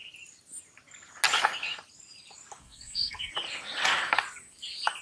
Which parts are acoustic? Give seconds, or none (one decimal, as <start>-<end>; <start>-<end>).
0.0-2.6; 3.3-5.0